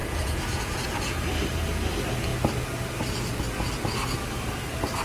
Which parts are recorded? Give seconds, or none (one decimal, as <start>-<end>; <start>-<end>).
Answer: 1.3-5.0